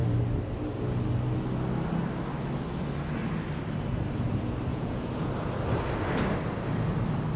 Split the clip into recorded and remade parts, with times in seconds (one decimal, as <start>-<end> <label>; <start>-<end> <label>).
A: 0.0-4.7 recorded; 4.7-5.3 remade; 5.3-7.4 recorded